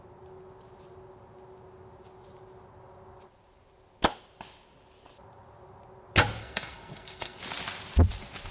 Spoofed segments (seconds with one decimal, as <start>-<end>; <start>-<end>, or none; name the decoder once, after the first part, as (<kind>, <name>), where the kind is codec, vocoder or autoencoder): 6.4-7.4 (codec, SNAC)